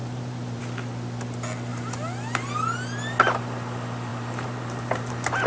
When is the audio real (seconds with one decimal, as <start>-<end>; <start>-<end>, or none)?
0.6-4.1; 5.1-5.5